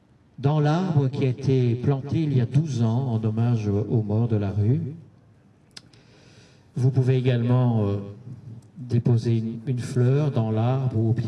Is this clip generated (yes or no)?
no